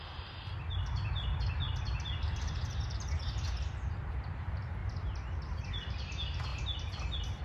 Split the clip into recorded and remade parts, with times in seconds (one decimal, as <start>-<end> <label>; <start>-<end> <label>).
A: 0.0-4.8 recorded; 4.8-5.6 remade; 5.6-7.4 recorded

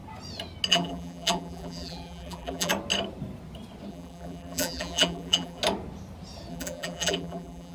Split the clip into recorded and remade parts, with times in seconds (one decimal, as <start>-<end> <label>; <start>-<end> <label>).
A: 0.0-0.7 recorded; 0.7-2.7 remade; 2.7-3.9 recorded; 3.9-5.6 remade; 5.6-6.5 recorded; 6.5-7.7 remade

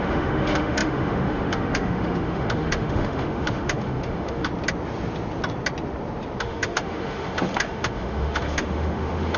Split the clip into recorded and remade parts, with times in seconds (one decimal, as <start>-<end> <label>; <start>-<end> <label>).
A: 0.0-4.5 remade; 4.5-6.4 recorded; 6.4-9.4 remade